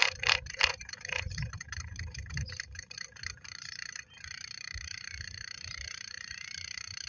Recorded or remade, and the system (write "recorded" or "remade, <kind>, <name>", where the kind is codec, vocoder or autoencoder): remade, vocoder, BigVGAN v2